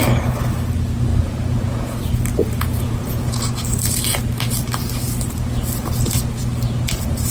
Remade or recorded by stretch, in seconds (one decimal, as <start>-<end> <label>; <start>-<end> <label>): 0.0-1.1 recorded; 1.1-2.0 remade; 2.0-2.4 recorded; 2.4-3.5 remade; 3.5-7.3 recorded